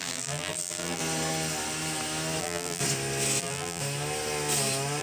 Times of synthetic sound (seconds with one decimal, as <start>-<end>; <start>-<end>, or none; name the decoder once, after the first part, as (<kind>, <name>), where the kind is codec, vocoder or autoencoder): 0.0-1.0 (vocoder, BigVGAN v2); 2.4-2.8; 3.4-3.8